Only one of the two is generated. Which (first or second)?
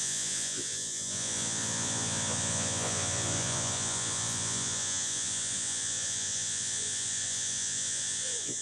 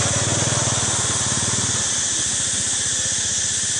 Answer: first